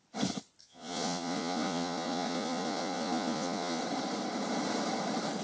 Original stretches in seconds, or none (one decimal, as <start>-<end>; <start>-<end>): 0.0-0.6; 3.8-5.4